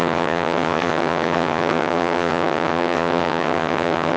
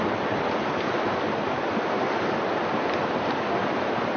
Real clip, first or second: second